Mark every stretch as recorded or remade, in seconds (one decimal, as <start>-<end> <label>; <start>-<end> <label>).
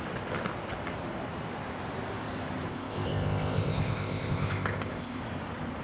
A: 0.0-2.7 recorded; 2.7-5.2 remade; 5.2-5.8 recorded